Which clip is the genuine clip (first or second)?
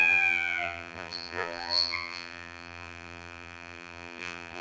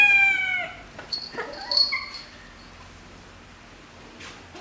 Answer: second